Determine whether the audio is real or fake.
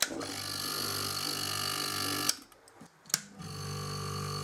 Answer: real